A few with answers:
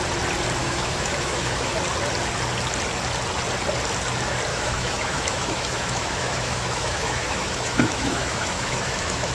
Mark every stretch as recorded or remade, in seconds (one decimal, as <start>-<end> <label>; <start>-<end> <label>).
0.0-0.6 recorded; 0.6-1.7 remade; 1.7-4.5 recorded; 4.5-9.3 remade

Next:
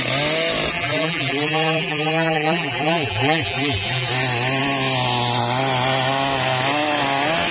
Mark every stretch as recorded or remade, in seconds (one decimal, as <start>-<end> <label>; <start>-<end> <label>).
0.0-0.7 recorded; 0.7-4.1 remade; 4.1-7.5 recorded

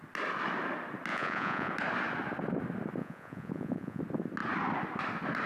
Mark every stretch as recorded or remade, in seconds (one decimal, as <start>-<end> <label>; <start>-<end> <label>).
0.0-1.1 recorded; 1.1-1.7 remade; 1.7-3.0 recorded; 3.0-4.0 remade; 4.0-5.5 recorded